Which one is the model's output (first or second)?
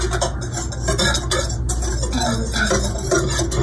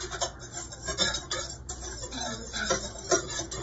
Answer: second